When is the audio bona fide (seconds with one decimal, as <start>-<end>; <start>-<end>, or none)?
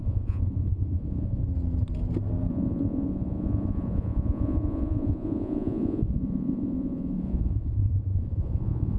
1.4-2.5